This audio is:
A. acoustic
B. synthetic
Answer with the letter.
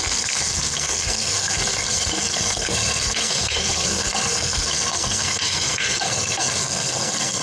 B